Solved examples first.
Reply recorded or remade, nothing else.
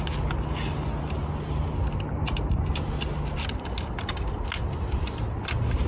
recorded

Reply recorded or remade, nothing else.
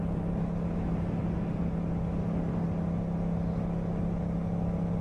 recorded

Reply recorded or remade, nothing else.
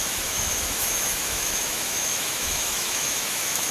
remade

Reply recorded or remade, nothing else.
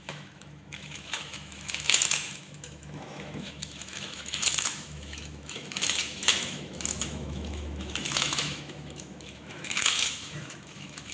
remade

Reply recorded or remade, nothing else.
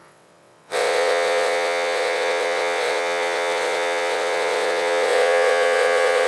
remade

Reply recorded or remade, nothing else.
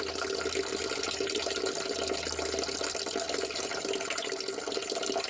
recorded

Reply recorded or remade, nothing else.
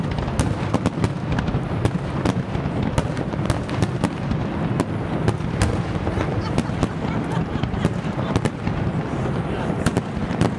recorded